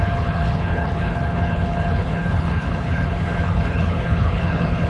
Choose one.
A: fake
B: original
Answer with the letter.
A